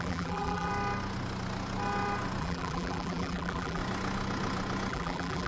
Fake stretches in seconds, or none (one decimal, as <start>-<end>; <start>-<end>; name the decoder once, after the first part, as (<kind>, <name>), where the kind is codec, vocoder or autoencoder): 0.0-0.7 (vocoder, BigVGAN v2); 2.4-3.8; 4.9-5.5